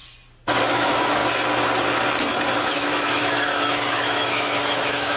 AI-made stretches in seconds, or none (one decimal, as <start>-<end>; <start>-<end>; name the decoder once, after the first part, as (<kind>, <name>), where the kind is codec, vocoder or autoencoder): 0.6-1.2 (autoencoder, DAC-VAE); 2.5-5.2